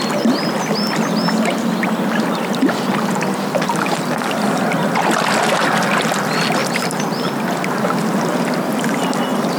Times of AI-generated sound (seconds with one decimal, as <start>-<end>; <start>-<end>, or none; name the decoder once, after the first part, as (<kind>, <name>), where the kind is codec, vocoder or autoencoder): none